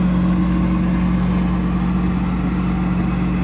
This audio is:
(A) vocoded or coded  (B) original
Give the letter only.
B